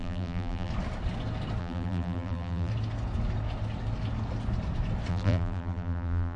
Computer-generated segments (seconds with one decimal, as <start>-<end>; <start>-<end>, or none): 0.0-0.7; 1.6-2.7; 5.1-6.4